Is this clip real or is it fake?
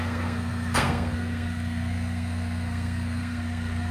fake